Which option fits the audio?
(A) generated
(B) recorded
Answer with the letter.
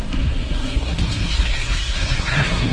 A